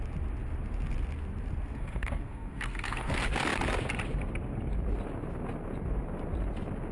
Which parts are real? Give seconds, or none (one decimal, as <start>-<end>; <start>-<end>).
0.0-1.7; 3.1-6.9